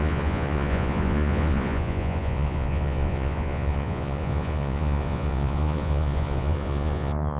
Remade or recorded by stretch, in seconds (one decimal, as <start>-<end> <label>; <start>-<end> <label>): 0.0-7.4 remade